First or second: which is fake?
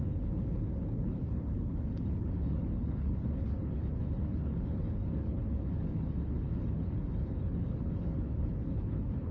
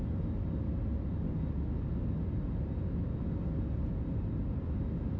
first